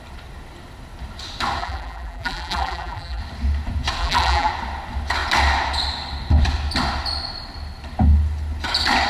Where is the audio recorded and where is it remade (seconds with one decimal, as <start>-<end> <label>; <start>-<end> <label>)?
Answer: 0.0-1.6 recorded; 1.6-3.2 remade; 3.2-4.0 recorded; 4.0-4.5 remade; 4.5-9.1 recorded